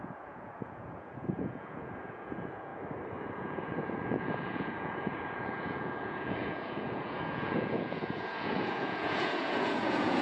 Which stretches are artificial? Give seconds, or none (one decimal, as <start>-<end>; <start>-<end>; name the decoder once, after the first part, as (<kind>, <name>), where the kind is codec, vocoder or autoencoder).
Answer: 0.0-2.7 (vocoder, Vocos); 3.4-10.2